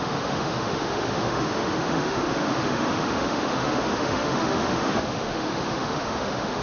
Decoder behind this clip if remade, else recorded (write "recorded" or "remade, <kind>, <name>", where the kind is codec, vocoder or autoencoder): remade, autoencoder, DAC-VAE